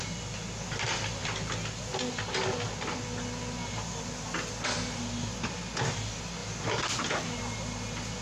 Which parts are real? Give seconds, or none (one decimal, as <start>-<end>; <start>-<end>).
0.0-8.2